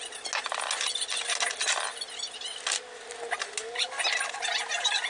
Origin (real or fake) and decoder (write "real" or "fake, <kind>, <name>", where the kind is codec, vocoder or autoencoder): real